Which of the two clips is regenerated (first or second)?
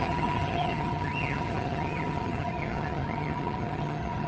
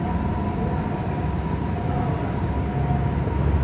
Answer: first